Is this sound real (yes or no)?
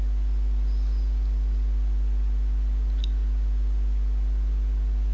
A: yes